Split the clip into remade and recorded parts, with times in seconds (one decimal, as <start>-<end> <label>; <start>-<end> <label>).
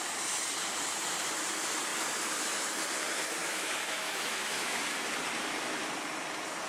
0.0-3.4 recorded; 3.4-4.8 remade; 4.8-6.7 recorded